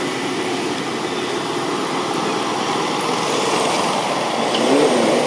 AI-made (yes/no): no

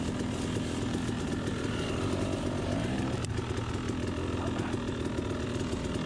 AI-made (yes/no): no